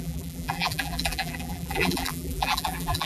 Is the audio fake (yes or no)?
yes